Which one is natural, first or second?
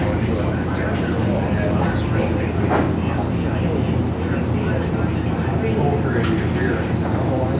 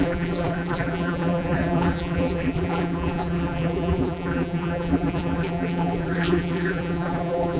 first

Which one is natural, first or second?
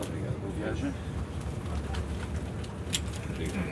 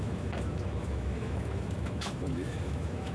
first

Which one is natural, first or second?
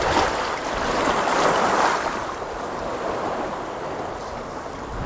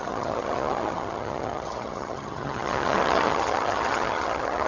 first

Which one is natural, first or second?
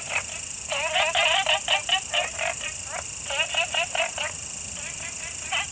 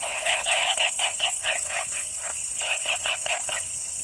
first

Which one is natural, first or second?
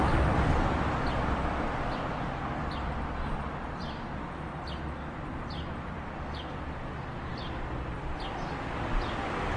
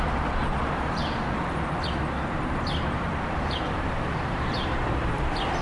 first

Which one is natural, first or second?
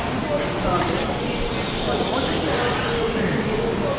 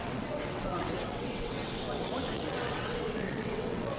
first